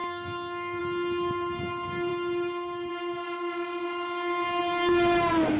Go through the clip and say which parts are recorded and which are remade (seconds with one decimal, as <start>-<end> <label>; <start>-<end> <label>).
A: 0.0-0.8 remade; 0.8-5.6 recorded